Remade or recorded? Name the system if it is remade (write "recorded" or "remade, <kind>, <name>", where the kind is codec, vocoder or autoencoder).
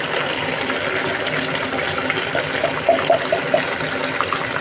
recorded